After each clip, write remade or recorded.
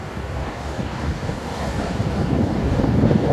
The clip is remade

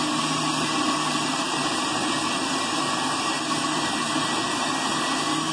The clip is recorded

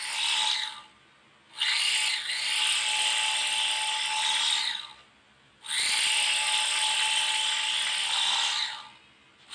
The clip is recorded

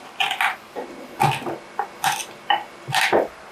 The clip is recorded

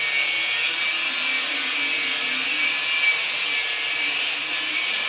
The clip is recorded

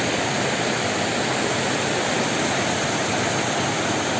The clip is recorded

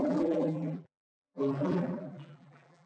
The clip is remade